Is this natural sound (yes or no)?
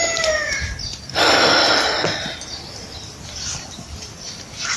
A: yes